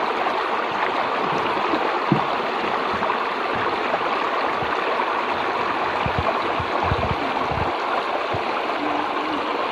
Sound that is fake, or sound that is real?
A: real